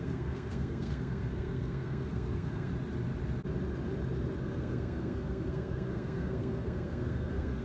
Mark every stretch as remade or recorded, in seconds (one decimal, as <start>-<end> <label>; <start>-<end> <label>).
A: 0.0-2.7 remade; 2.7-4.4 recorded; 4.4-7.6 remade